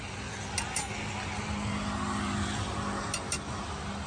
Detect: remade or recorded recorded